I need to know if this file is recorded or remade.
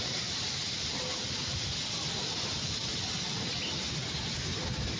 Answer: recorded